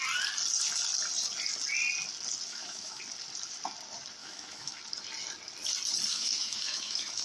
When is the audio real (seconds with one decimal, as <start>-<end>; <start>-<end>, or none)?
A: 0.0-2.5; 3.0-4.2; 4.8-6.1